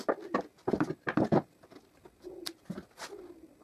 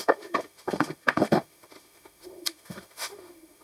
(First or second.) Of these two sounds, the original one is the first